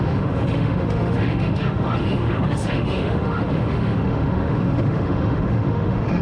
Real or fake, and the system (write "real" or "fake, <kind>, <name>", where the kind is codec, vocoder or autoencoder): fake, autoencoder, DAC-VAE